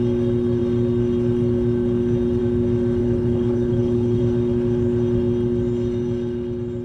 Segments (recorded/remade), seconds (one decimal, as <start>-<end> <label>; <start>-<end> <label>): 0.0-3.0 recorded; 3.0-4.2 remade; 4.2-6.8 recorded

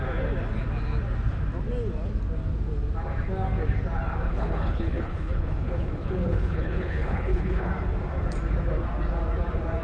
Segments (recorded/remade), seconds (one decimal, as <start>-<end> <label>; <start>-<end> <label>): 0.0-4.3 recorded; 4.3-7.7 remade; 7.7-9.8 recorded

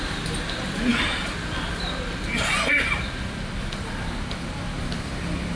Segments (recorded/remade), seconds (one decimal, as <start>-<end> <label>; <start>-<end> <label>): 0.0-5.6 recorded

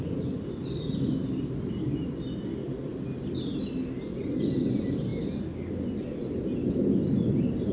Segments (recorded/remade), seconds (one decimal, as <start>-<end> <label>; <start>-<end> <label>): 0.0-7.7 recorded

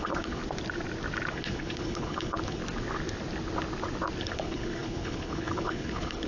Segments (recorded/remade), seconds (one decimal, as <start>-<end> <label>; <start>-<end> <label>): 0.0-0.4 remade; 0.4-1.3 recorded; 1.3-2.6 remade; 2.6-4.2 recorded; 4.2-6.3 remade